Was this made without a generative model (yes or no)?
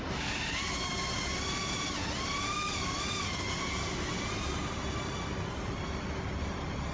yes